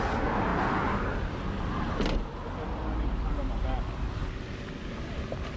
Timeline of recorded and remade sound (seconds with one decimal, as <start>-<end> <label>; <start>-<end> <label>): 0.0-5.6 recorded